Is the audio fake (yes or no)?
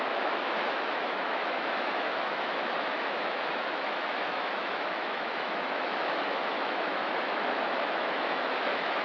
yes